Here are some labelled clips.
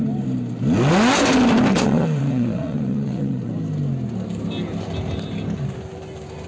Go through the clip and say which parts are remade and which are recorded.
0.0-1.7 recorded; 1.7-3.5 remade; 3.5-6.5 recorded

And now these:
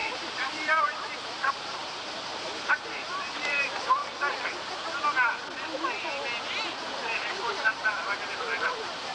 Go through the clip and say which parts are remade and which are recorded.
0.0-4.0 remade; 4.0-6.6 recorded; 6.6-9.1 remade